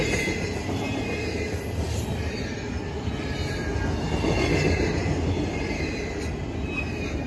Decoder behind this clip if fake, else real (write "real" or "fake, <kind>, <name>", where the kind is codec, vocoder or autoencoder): real